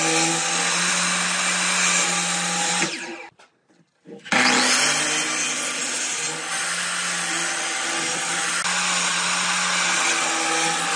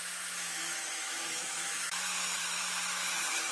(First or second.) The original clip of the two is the first